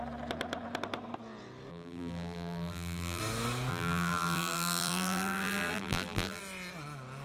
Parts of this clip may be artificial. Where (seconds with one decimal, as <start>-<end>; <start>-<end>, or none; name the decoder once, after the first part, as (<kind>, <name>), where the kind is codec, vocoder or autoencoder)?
1.7-3.2 (vocoder, BigVGAN v2); 3.7-6.4